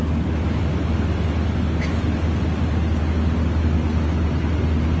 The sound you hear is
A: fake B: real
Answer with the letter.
B